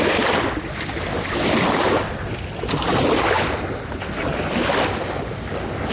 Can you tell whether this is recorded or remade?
recorded